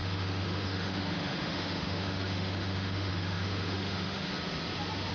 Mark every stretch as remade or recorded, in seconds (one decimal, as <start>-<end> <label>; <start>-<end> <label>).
0.0-4.3 remade; 4.3-5.1 recorded